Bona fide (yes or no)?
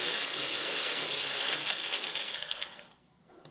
no